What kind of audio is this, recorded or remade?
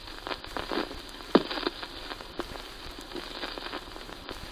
recorded